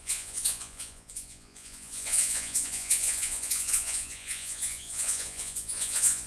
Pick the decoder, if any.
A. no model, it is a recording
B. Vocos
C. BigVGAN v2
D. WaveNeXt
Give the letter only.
B